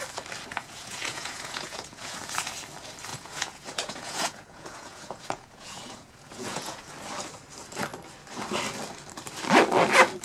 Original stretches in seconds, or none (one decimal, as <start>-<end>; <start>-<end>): 0.0-0.5; 2.2-3.1; 6.9-10.2